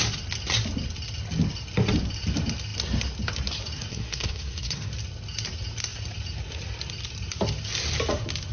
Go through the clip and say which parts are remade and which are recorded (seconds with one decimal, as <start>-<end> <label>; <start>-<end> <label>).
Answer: 0.0-3.9 recorded; 3.9-4.9 remade; 4.9-8.5 recorded